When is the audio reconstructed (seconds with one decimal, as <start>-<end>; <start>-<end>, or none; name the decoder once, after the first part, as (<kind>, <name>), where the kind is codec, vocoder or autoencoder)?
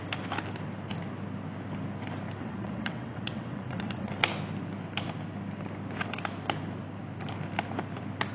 2.4-4.1 (vocoder, WaveNeXt)